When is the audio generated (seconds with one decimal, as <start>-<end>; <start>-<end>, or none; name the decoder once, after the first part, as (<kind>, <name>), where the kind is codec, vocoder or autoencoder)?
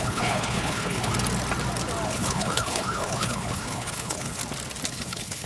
0.0-1.1 (codec, HILCodec); 2.1-4.4; 4.9-5.5